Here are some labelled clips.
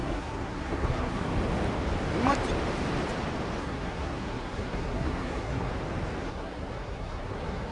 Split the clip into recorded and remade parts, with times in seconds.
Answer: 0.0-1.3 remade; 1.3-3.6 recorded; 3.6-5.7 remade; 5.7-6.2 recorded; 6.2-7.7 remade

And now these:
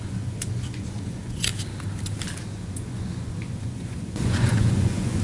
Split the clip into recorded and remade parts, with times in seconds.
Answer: 0.0-1.5 remade; 1.5-2.4 recorded; 2.4-5.2 remade

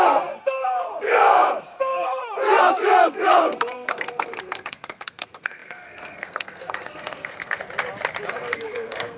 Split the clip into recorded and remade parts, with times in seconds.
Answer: 0.0-7.6 remade; 7.6-8.3 recorded; 8.3-9.2 remade